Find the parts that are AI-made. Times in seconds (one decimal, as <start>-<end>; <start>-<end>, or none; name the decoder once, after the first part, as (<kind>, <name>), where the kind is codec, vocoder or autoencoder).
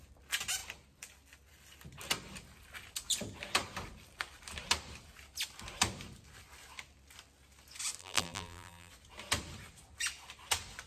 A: 8.0-8.9 (vocoder, BigVGAN v2)